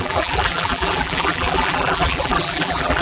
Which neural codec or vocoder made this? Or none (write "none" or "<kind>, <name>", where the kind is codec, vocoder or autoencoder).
vocoder, BigVGAN v2